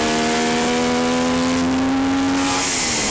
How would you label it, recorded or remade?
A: recorded